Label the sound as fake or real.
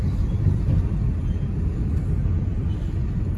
real